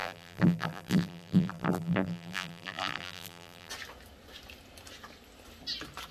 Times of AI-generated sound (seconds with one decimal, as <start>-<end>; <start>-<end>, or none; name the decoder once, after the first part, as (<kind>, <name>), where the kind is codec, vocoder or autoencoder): 0.0-3.7 (vocoder, BigVGAN v2)